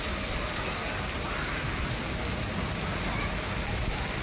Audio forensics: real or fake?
real